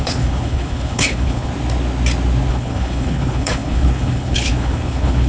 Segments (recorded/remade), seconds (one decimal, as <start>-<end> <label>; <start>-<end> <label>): 0.0-1.5 remade; 1.5-2.5 recorded; 2.5-5.3 remade